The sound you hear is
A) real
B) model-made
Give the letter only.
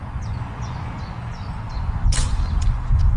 B